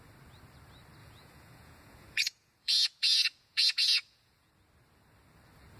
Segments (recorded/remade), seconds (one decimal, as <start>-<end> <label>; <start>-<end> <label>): 0.0-1.0 recorded; 1.0-4.5 remade; 4.5-5.8 recorded